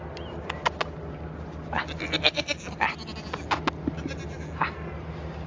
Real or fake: real